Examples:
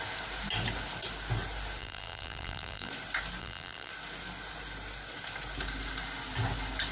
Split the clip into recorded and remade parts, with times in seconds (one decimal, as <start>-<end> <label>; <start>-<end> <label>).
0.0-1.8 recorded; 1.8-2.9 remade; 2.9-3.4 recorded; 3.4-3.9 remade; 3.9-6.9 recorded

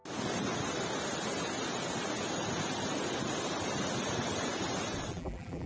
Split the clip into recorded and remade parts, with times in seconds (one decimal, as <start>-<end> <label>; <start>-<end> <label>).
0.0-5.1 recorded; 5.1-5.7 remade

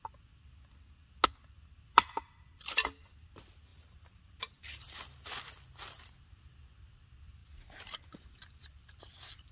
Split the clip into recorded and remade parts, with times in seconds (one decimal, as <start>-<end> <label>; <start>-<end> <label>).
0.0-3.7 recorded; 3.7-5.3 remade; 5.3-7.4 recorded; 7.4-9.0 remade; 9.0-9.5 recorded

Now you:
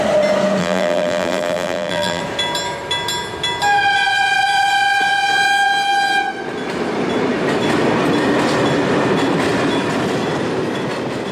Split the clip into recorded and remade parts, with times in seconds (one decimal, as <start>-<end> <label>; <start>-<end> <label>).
0.0-0.6 recorded; 0.6-2.2 remade; 2.2-11.3 recorded